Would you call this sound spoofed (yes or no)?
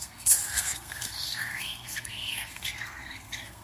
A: yes